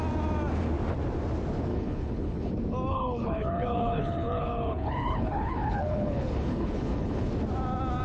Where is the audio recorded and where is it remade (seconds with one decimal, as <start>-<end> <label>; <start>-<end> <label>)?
0.0-1.7 recorded; 1.7-2.5 remade; 2.5-2.9 recorded; 2.9-7.3 remade; 7.3-8.0 recorded